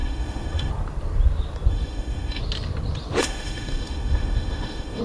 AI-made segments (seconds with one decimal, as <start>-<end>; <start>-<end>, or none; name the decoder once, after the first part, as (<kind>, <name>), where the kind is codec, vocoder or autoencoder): 0.0-0.7 (autoencoder, DAC-VAE); 1.7-2.4; 3.2-5.0

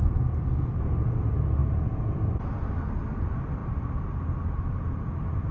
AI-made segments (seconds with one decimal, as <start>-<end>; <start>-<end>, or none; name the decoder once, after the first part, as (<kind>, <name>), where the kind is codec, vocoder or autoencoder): 1.6-2.2 (vocoder, Vocos)